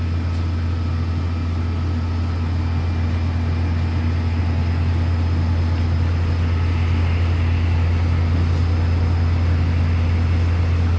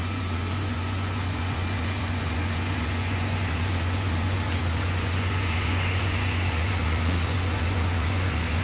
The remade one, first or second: second